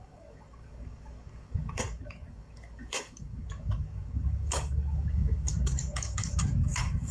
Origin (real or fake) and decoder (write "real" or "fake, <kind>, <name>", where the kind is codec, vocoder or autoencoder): fake, codec, DAC